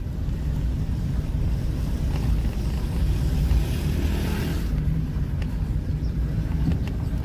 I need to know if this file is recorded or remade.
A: recorded